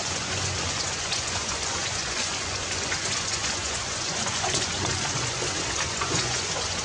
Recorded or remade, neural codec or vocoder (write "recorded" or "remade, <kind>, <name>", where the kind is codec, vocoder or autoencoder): remade, vocoder, Vocos